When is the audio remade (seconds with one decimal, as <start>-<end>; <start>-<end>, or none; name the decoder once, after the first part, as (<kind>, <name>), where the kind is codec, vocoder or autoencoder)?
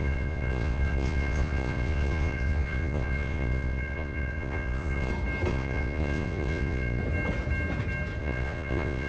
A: 0.0-5.1 (vocoder, Vocos); 5.5-7.0; 8.2-9.1